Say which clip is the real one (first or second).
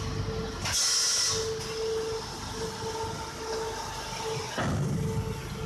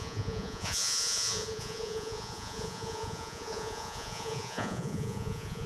first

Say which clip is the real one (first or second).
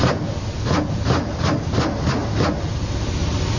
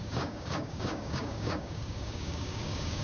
first